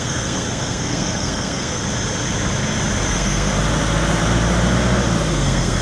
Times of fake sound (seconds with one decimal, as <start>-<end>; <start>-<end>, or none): 0.0-1.8; 3.1-3.5; 5.3-5.8